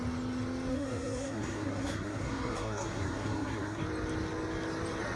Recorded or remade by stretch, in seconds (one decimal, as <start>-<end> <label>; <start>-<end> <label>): 0.0-0.7 recorded; 0.7-3.8 remade; 3.8-5.2 recorded